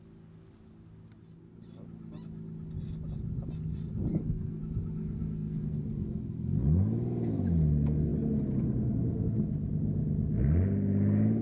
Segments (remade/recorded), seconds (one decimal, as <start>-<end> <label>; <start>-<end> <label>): 0.0-4.1 recorded; 4.1-4.6 remade; 4.6-5.0 recorded; 5.0-5.8 remade; 5.8-11.4 recorded